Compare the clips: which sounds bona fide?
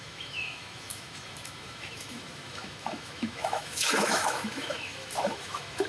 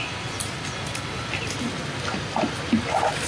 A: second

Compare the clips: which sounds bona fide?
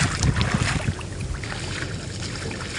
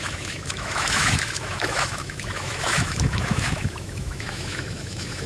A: first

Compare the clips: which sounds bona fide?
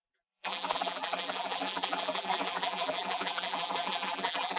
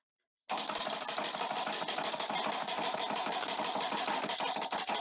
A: second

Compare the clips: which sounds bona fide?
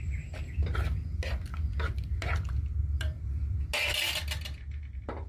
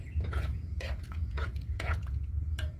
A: first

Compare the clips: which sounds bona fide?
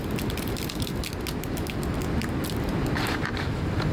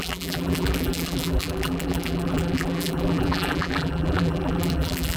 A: first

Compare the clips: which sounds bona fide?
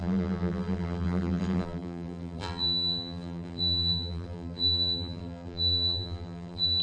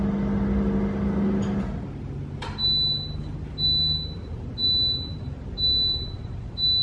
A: second